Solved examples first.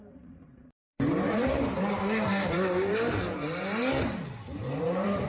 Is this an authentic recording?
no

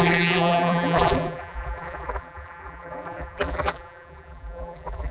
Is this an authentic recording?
no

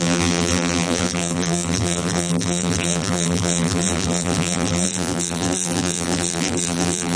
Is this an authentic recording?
no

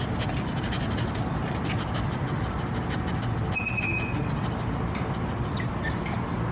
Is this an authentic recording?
yes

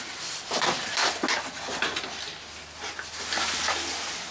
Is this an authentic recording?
yes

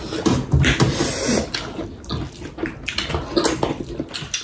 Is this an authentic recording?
yes